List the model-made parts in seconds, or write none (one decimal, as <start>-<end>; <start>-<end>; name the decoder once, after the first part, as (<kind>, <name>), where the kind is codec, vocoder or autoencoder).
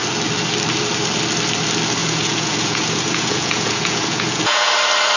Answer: 2.0-4.7 (vocoder, Vocos)